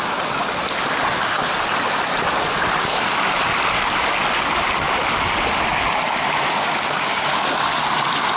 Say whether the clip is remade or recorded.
recorded